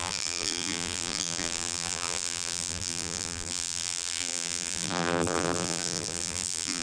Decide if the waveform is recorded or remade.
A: remade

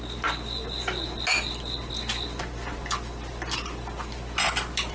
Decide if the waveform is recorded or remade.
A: recorded